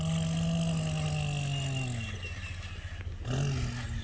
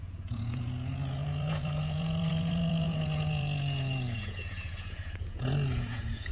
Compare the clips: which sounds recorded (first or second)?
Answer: first